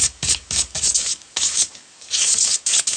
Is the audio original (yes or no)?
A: no